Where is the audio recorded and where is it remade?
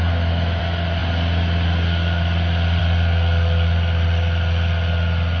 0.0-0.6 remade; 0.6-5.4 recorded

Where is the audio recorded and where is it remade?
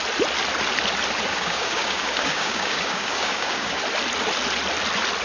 0.0-1.3 recorded; 1.3-3.8 remade; 3.8-5.2 recorded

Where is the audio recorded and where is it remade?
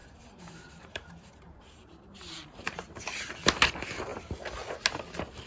0.0-3.3 remade; 3.3-5.5 recorded